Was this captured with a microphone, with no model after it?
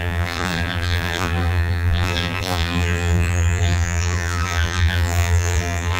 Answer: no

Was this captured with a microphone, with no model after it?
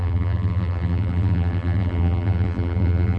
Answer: no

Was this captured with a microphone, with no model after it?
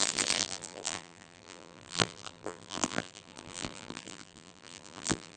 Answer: no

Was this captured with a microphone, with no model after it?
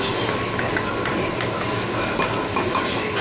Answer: yes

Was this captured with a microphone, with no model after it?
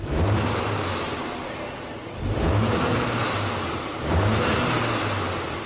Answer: no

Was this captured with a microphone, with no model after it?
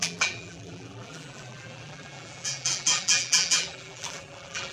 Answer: no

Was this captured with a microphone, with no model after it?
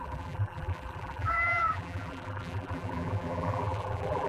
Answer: no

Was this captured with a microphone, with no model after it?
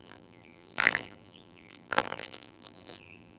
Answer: no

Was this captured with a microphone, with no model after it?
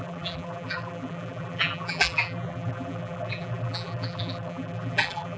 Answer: no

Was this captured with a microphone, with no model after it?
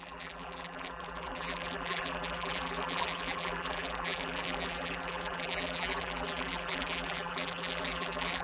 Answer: no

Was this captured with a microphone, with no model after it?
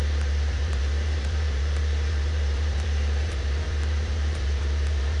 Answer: no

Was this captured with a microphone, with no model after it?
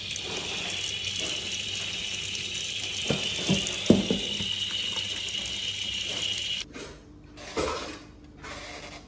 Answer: yes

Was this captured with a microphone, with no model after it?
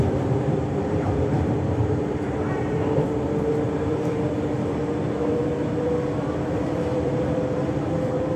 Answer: no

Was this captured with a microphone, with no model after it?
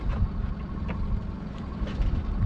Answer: yes